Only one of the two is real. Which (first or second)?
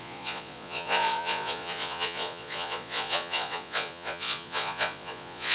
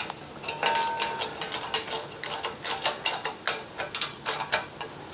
second